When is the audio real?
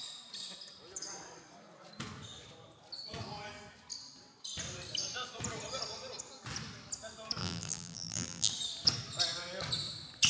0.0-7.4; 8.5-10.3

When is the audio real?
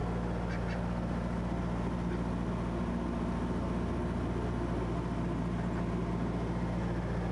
0.0-7.3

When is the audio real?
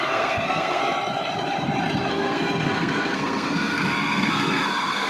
0.8-2.1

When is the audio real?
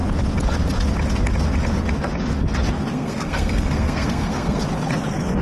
0.0-2.9; 4.6-5.4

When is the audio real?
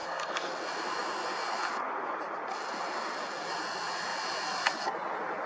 0.5-5.5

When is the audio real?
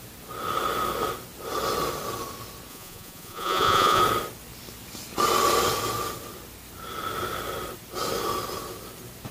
0.0-2.7; 4.0-9.3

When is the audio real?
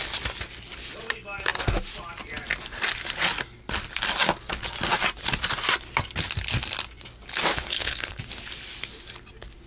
0.0-7.5; 8.2-9.7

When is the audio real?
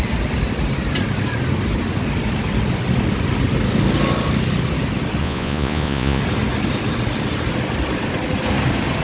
0.0-5.2; 6.2-9.0